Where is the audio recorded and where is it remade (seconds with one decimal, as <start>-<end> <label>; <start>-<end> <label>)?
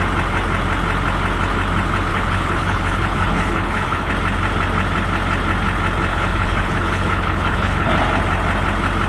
0.0-2.1 recorded; 2.1-4.1 remade; 4.1-6.1 recorded; 6.1-7.9 remade; 7.9-9.1 recorded